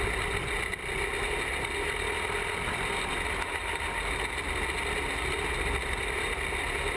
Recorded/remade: recorded